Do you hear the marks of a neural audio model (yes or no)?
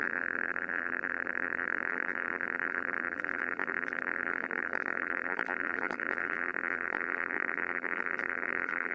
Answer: yes